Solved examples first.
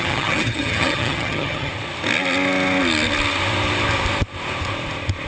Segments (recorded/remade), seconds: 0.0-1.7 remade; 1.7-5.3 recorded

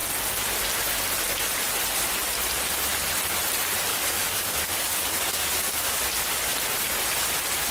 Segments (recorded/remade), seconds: 0.0-3.9 recorded; 3.9-6.0 remade; 6.0-7.7 recorded

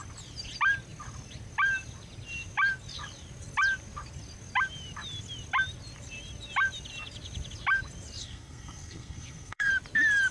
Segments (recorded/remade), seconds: 0.0-8.2 recorded; 8.2-9.7 remade; 9.7-10.3 recorded

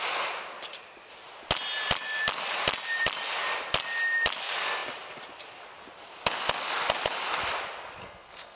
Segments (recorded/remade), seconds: 0.0-8.0 recorded; 8.0-8.6 remade

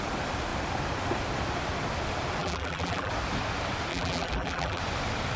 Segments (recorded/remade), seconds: 0.0-2.4 recorded; 2.4-3.1 remade; 3.1-3.9 recorded; 3.9-4.8 remade; 4.8-5.4 recorded

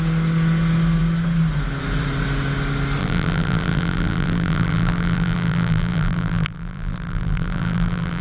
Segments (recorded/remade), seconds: 0.0-3.0 recorded; 3.0-8.2 remade